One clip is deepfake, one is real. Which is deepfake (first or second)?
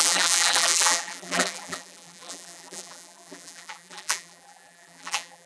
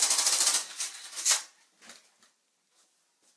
first